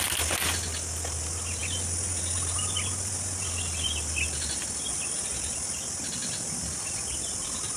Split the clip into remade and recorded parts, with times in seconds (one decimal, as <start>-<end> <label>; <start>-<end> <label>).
0.0-7.8 recorded